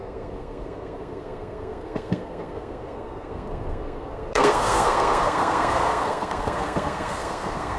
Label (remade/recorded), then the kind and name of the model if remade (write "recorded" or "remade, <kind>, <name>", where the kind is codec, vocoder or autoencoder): remade, codec, SNAC